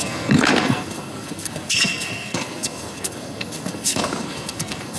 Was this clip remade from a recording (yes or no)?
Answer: yes